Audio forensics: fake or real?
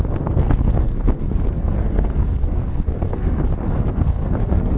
fake